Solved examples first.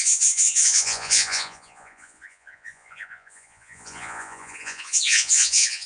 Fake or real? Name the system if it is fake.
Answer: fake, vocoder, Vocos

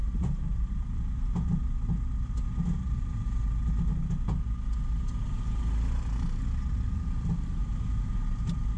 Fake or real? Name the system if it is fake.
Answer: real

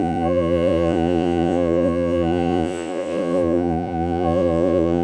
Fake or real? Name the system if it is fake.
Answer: fake, vocoder, Vocos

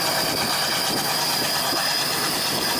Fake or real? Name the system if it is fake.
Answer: real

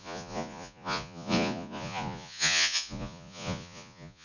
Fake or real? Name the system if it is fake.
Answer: fake, vocoder, Vocos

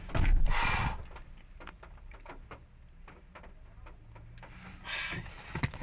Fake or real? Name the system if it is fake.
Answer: real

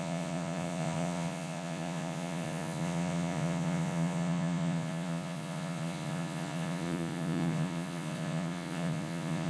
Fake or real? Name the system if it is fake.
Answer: fake, vocoder, Vocos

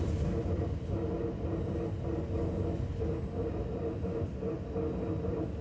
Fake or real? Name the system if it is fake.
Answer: real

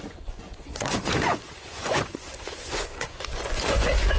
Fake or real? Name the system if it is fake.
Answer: fake, vocoder, Vocos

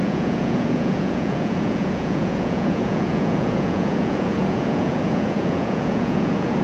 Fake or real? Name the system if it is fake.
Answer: fake, vocoder, Vocos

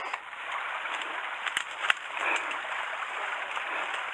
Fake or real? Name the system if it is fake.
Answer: real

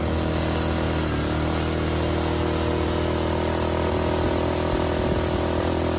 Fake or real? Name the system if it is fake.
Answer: real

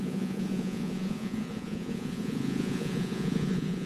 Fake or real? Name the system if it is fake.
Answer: fake, vocoder, Vocos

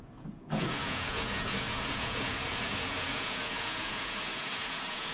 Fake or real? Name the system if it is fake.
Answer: fake, vocoder, Vocos